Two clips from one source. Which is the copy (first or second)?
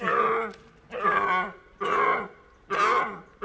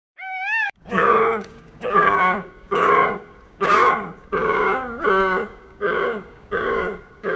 second